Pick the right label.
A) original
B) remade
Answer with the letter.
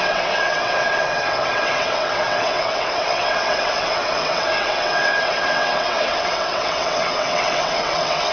B